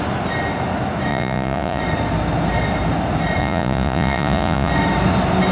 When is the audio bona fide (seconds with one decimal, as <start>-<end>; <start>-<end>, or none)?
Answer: 0.0-1.1; 1.8-3.4; 4.7-5.5